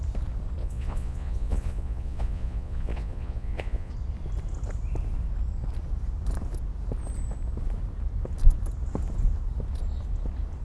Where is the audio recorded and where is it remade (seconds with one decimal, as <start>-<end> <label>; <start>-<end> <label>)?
0.0-0.6 recorded; 0.6-3.9 remade; 3.9-10.6 recorded